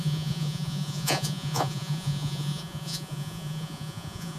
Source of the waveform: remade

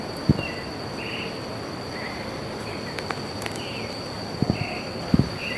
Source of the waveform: recorded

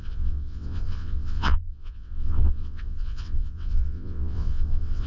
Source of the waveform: remade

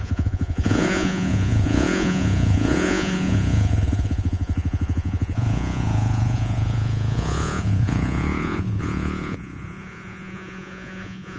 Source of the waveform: remade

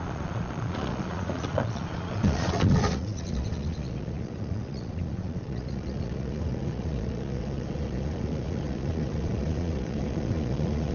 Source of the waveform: remade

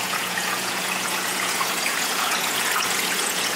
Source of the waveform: remade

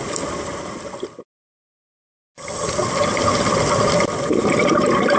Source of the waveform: recorded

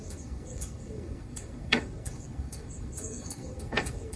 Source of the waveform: remade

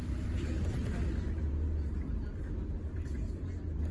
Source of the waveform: recorded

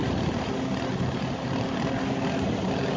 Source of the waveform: recorded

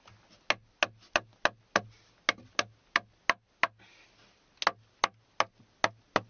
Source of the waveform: recorded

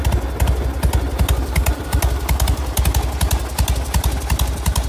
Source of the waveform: recorded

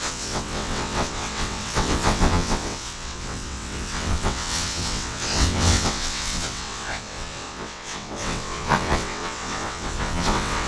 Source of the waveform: remade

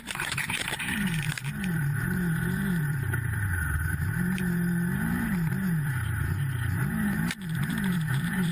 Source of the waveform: remade